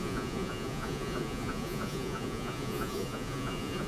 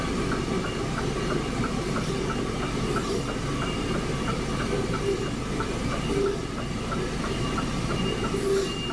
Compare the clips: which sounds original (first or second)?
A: second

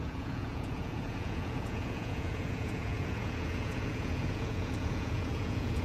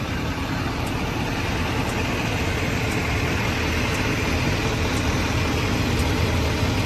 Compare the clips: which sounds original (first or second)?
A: second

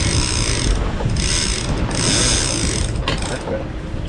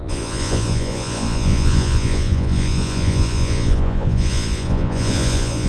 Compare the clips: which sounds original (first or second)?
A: first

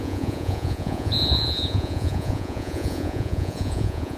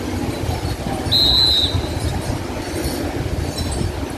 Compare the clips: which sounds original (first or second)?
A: second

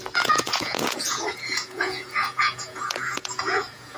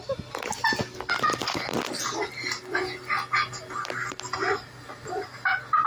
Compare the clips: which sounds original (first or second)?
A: second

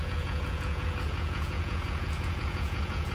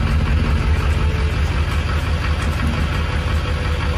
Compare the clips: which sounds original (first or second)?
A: second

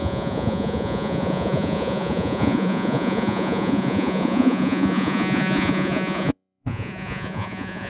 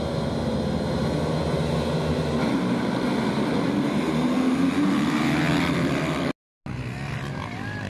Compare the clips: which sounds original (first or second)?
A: second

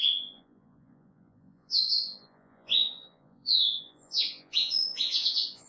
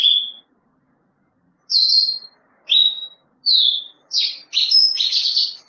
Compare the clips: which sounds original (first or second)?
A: second